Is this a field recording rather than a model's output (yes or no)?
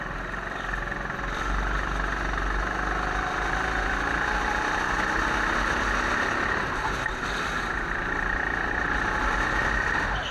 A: yes